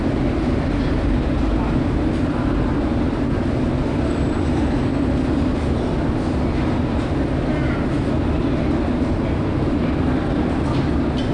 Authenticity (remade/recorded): recorded